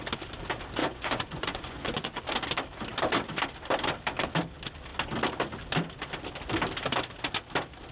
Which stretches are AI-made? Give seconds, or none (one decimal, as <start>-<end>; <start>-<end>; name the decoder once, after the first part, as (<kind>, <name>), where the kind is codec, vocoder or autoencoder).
0.8-2.2 (vocoder, Vocos)